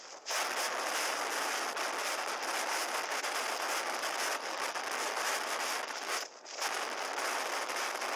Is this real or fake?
real